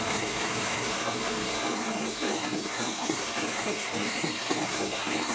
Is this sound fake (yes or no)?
yes